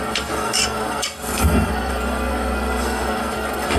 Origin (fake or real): fake